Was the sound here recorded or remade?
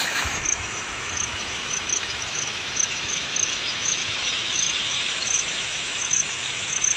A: remade